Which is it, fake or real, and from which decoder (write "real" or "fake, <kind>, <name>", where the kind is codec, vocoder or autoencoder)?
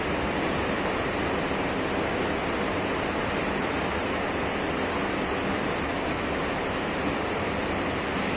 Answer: real